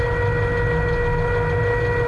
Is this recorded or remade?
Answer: recorded